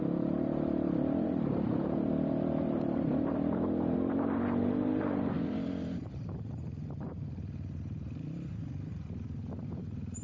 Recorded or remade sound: remade